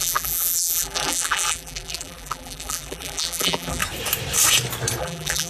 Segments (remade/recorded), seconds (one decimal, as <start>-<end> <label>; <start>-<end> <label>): 0.0-3.8 remade; 3.8-5.0 recorded; 5.0-5.5 remade